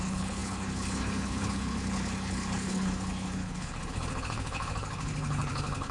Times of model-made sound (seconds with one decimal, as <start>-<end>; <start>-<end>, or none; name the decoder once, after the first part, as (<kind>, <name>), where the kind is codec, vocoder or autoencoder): 0.0-5.9 (codec, HILCodec)